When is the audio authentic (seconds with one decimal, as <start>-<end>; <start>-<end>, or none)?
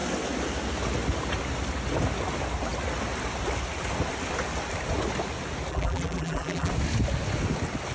0.0-5.7; 6.7-7.9